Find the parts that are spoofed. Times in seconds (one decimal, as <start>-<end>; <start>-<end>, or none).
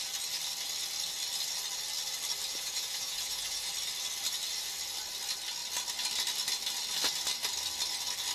2.5-3.7